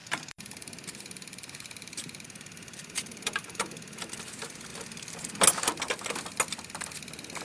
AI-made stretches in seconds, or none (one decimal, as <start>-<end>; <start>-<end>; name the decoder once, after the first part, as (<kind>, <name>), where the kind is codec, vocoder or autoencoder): 0.0-4.1 (vocoder, BigVGAN v2)